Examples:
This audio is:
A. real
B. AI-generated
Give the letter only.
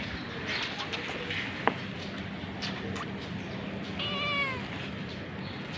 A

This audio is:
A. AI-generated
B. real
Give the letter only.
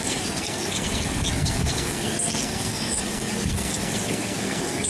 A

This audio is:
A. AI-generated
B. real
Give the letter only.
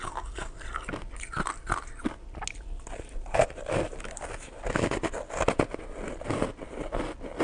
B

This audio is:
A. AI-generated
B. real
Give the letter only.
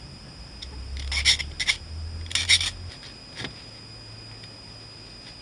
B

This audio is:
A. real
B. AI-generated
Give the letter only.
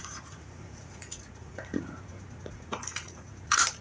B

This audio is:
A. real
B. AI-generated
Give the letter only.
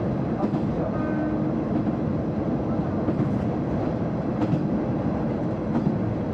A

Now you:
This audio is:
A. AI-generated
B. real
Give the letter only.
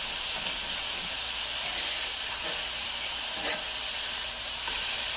A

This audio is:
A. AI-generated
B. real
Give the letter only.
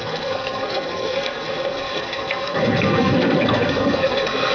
A